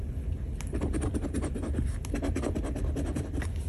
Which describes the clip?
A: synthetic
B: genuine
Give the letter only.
B